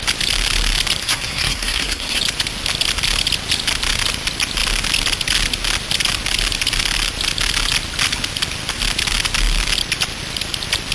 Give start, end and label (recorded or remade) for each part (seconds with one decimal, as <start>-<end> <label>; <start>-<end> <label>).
0.0-1.0 recorded; 1.0-2.2 remade; 2.2-10.9 recorded

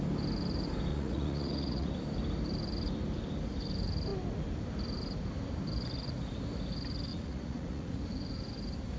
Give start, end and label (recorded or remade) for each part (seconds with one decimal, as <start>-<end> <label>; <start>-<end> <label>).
0.0-0.9 recorded; 0.9-1.9 remade; 1.9-7.1 recorded; 7.1-8.0 remade; 8.0-9.0 recorded